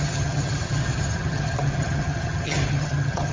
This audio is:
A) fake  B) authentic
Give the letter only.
A